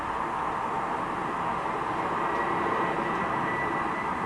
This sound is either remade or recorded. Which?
recorded